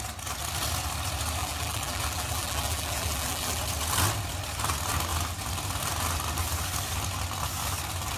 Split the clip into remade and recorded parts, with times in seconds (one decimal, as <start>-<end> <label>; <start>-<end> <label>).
0.0-1.4 recorded; 1.4-3.6 remade; 3.6-8.2 recorded